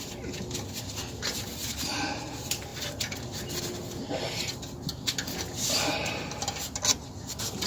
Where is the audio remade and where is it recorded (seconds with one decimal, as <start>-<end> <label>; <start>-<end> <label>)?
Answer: 0.0-7.7 recorded